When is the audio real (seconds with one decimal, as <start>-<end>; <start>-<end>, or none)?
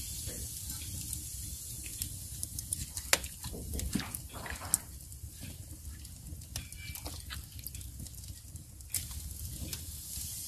0.0-10.5